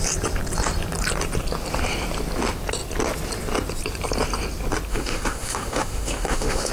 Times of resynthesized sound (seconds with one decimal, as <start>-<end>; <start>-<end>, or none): 4.9-6.7